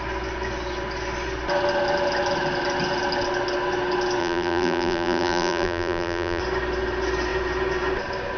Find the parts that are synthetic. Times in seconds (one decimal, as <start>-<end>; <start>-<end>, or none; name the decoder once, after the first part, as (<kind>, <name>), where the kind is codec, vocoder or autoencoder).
4.2-6.4 (vocoder, BigVGAN v2)